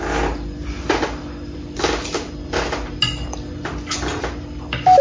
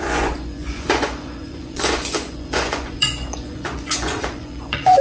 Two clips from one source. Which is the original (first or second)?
first